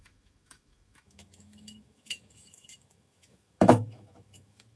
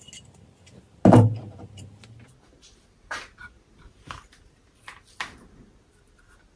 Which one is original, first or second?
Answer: second